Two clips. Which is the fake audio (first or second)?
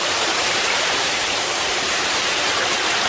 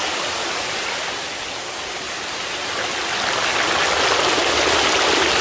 first